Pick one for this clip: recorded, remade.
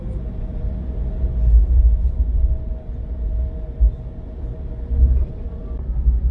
recorded